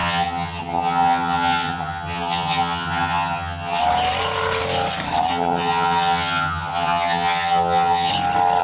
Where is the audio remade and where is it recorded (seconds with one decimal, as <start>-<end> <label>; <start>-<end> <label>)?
0.0-3.8 remade; 3.8-5.3 recorded; 5.3-8.1 remade; 8.1-8.6 recorded